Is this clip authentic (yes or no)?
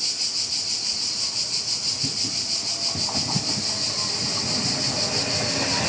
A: yes